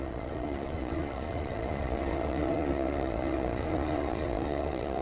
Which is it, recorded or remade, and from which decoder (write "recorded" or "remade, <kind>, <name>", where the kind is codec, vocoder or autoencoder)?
remade, vocoder, Vocos